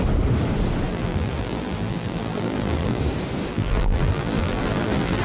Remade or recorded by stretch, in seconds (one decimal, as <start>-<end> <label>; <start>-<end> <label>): 0.0-0.9 recorded; 0.9-3.0 remade; 3.0-3.5 recorded; 3.5-5.2 remade